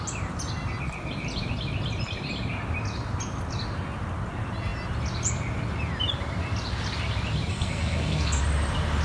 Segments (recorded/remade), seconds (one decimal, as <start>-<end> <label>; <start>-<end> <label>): 0.0-7.5 recorded; 7.5-8.4 remade; 8.4-9.0 recorded